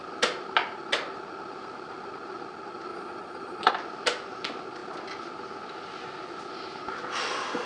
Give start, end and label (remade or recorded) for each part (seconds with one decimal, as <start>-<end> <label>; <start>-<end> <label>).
0.0-2.9 recorded; 2.9-3.7 remade; 3.7-7.7 recorded